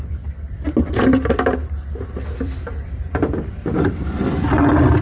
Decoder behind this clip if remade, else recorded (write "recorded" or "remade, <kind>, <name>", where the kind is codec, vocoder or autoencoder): remade, vocoder, BigVGAN v2